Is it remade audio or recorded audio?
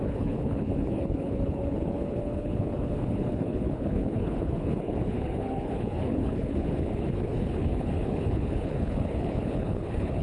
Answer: remade